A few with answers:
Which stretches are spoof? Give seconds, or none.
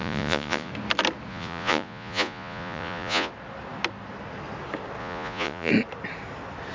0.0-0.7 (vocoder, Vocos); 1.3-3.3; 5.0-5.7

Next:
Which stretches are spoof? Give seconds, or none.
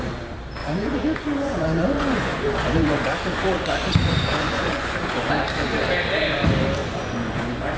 0.6-5.3 (vocoder, Vocos); 6.8-7.8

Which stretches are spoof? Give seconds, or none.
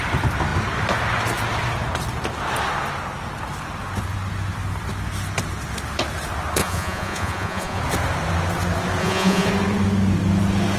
6.6-7.8 (vocoder, Vocos); 9.0-9.5